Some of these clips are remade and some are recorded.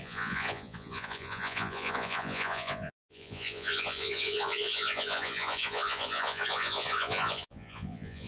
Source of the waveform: remade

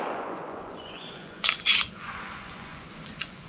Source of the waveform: remade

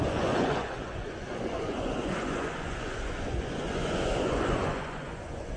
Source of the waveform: remade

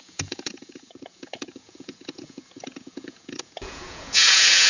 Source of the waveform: remade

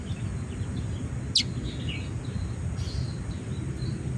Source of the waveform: recorded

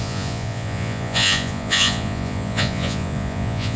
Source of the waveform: remade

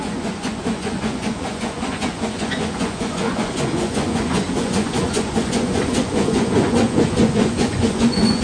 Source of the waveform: remade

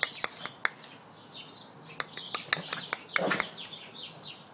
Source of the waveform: recorded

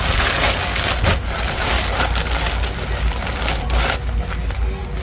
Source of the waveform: recorded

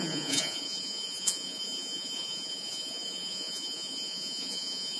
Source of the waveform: remade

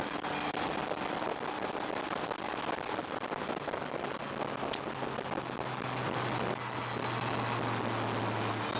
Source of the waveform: recorded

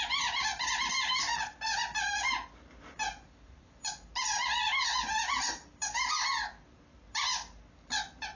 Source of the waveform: recorded